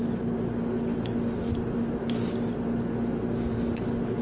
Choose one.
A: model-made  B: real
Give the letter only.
B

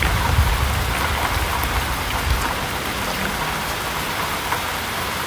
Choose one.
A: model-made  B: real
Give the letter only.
B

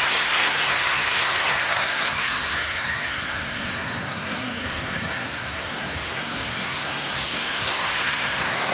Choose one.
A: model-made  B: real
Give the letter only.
A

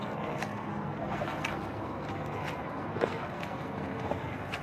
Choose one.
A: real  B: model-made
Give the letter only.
B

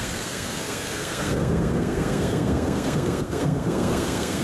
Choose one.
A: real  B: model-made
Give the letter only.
B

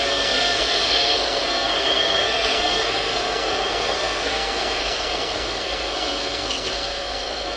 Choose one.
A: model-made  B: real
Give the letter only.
A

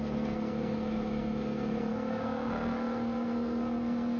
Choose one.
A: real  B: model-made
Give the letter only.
B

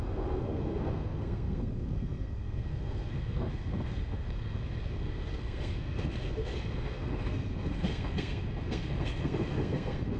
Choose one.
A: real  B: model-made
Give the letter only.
B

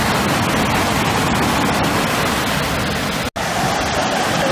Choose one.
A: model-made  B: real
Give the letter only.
B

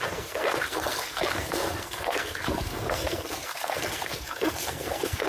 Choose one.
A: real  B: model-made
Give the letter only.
B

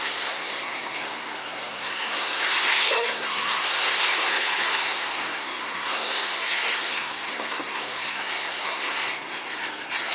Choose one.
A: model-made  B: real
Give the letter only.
A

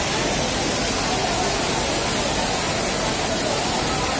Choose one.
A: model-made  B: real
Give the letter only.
B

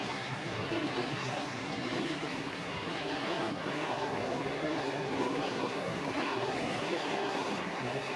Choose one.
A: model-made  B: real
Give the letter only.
A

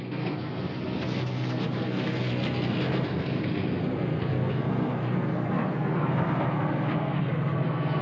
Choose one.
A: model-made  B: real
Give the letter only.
A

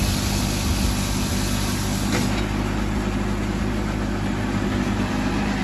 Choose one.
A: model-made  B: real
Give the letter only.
B